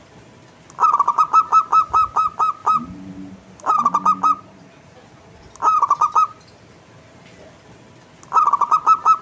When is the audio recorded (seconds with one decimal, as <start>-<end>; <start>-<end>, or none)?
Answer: 0.0-9.2